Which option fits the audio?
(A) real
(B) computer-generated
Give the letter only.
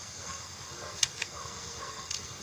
B